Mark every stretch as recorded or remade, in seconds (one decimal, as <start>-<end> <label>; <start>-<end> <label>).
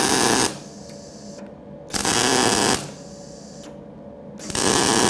0.0-5.1 recorded